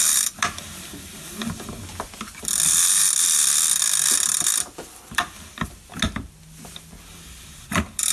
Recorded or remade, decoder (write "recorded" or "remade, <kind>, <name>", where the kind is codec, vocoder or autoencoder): recorded